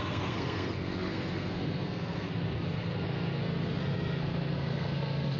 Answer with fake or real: fake